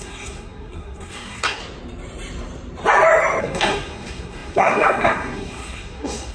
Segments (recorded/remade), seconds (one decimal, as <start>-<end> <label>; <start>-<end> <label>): 0.0-1.6 remade; 1.6-3.4 recorded; 3.4-6.3 remade